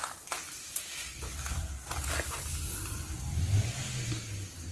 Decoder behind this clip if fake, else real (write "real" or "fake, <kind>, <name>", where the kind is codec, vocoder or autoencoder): real